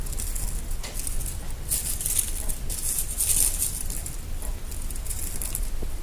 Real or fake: real